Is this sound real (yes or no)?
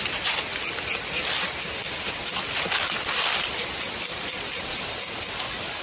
yes